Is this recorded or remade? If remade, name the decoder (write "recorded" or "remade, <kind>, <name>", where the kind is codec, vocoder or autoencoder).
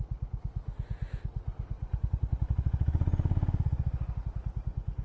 recorded